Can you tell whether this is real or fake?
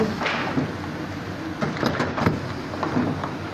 real